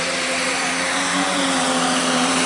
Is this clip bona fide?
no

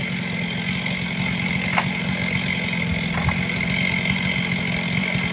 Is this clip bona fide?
yes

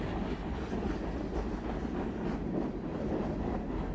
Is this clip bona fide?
yes